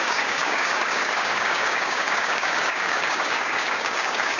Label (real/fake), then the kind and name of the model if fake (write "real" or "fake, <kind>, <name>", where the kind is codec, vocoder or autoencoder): fake, codec, DAC